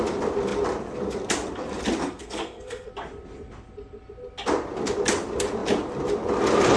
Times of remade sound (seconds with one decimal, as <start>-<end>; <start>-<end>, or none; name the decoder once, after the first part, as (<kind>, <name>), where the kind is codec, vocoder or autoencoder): 2.0-2.9 (codec, SNAC)